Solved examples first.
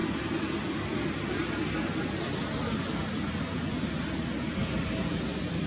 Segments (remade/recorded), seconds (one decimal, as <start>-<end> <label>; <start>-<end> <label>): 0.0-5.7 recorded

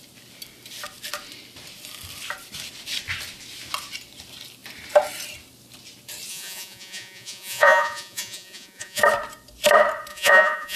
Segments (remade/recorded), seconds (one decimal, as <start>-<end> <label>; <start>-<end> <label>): 0.0-6.3 recorded; 6.3-9.0 remade; 9.0-10.1 recorded; 10.1-10.8 remade

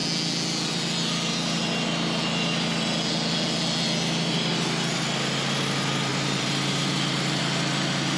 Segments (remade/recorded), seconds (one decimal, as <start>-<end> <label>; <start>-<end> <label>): 0.0-6.1 recorded; 6.1-7.4 remade; 7.4-8.2 recorded

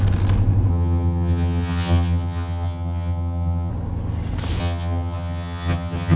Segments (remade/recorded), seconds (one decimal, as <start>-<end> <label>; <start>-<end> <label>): 0.0-0.7 recorded; 0.7-3.7 remade; 3.7-4.6 recorded; 4.6-6.2 remade